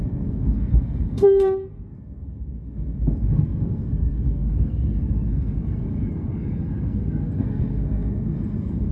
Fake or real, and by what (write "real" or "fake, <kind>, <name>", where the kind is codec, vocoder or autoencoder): fake, codec, SNAC